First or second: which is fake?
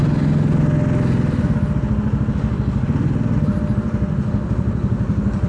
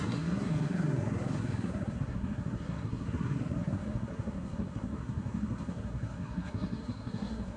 second